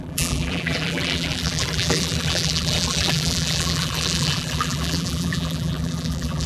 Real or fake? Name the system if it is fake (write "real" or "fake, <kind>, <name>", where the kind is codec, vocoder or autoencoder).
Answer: fake, vocoder, BigVGAN v2